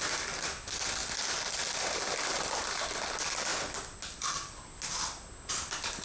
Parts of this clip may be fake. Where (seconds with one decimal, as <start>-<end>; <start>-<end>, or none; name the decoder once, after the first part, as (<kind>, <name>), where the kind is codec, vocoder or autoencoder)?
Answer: none